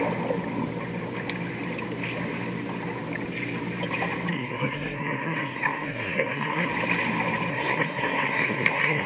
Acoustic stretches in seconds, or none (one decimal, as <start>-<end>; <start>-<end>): 0.0-4.3; 6.7-7.5